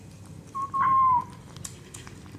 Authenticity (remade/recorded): recorded